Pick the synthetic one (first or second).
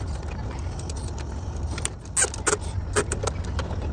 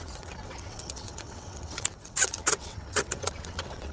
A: second